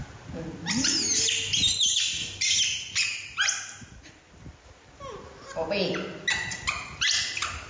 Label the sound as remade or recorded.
recorded